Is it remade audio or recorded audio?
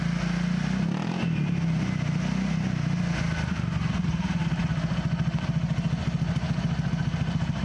recorded